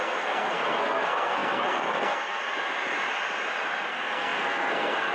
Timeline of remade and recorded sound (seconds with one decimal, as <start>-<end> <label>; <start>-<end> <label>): 0.0-2.4 remade; 2.4-3.9 recorded; 3.9-5.1 remade